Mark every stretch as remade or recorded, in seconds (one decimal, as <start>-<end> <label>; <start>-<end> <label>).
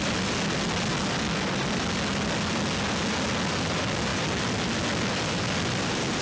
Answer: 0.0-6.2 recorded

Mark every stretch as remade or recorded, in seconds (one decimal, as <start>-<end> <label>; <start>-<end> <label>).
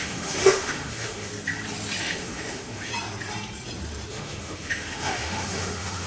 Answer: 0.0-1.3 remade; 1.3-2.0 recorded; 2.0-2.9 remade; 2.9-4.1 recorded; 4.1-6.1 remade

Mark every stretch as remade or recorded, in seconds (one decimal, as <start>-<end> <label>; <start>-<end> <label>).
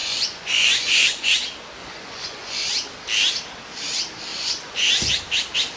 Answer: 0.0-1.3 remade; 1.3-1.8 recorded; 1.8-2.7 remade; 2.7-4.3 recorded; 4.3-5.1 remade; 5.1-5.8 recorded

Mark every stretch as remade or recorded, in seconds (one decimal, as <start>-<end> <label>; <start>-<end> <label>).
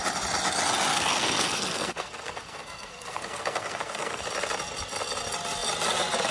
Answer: 0.0-0.9 recorded; 0.9-4.2 remade; 4.2-6.3 recorded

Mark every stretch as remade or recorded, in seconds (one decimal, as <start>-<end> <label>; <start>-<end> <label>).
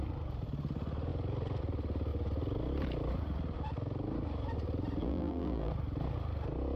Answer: 0.0-5.0 recorded; 5.0-5.7 remade; 5.7-6.8 recorded